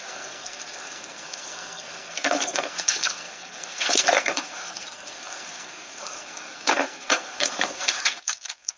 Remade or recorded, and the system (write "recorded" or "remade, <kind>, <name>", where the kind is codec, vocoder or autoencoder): remade, codec, SNAC